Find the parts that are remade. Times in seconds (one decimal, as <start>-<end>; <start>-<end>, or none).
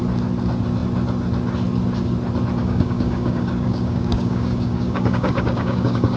2.6-6.2